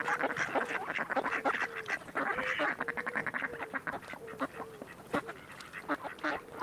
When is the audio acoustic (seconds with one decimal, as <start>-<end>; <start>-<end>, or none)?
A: 0.0-6.6